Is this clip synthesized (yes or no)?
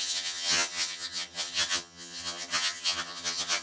yes